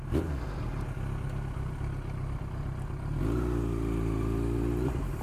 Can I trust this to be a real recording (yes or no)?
yes